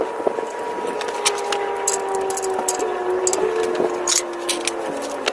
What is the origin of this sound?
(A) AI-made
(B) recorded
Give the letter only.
B